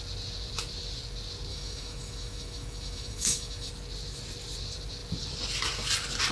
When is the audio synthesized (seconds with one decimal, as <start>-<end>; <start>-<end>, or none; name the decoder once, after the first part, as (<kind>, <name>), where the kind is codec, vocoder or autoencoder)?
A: 1.5-3.7 (autoencoder, DAC-VAE)